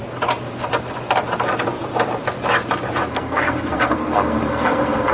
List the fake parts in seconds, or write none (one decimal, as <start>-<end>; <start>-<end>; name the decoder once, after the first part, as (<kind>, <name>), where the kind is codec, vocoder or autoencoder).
3.1-5.1 (codec, SNAC)